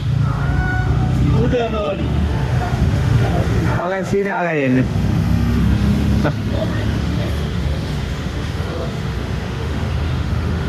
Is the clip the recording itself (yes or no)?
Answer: no